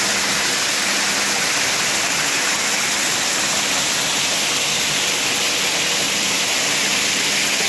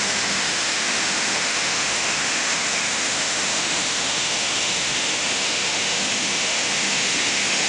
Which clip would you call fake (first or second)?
second